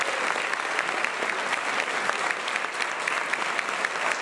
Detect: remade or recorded recorded